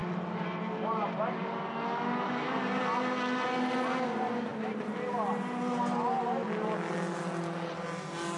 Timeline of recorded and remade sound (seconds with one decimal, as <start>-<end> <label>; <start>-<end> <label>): 0.0-8.4 recorded